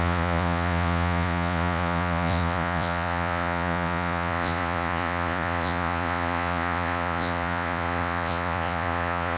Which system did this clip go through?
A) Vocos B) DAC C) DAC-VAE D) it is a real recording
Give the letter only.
A